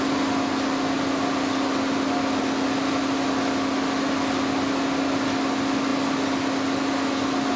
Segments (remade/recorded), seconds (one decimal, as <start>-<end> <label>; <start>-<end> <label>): 0.0-7.6 recorded